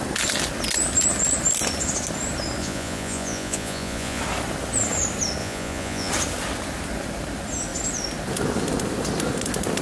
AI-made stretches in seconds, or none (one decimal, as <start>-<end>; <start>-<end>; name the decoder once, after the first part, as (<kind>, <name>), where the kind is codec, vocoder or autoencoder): 2.6-4.2 (vocoder, Vocos); 5.4-6.1

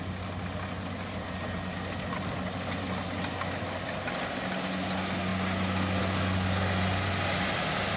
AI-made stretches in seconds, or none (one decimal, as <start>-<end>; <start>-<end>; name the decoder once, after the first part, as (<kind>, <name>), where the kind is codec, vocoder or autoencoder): none

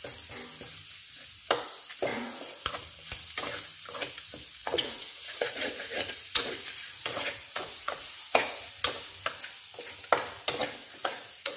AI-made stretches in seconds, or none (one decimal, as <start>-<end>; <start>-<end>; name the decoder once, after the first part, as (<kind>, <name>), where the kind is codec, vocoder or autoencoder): 2.1-2.7 (vocoder, Vocos); 4.6-8.7; 10.8-11.6